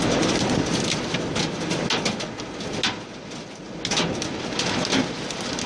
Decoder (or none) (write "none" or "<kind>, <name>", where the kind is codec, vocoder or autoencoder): none